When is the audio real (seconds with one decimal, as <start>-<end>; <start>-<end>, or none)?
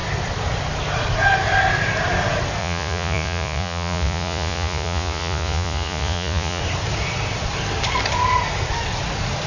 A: 0.0-2.6; 6.6-9.5